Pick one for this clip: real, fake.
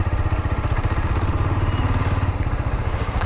real